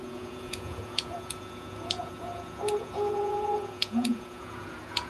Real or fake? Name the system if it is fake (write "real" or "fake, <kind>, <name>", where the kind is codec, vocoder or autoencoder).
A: fake, vocoder, Vocos